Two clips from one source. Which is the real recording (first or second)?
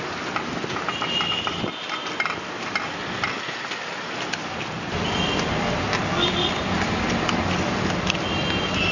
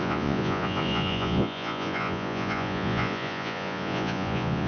first